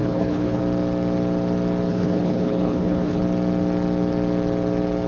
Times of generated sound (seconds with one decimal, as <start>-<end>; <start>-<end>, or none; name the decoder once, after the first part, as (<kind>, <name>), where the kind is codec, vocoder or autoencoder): 0.0-0.6 (codec, HILCodec); 1.9-3.2